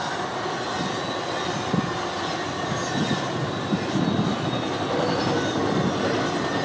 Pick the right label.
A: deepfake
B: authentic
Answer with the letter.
B